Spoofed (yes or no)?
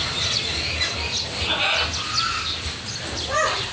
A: no